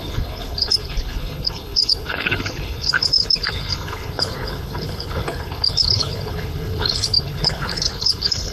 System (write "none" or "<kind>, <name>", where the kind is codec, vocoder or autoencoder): codec, HILCodec